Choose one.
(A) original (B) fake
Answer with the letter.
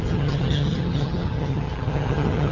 B